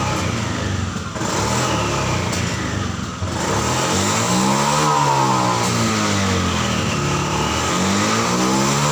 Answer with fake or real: real